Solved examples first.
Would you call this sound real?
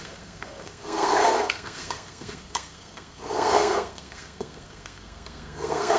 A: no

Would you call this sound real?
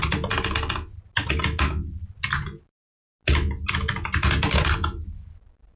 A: yes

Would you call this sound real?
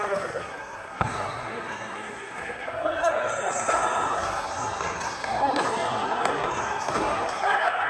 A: no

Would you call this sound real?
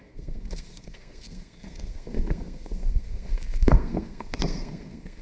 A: no